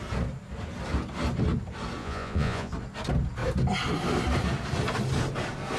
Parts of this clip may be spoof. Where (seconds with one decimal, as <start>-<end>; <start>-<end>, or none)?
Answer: 2.0-2.7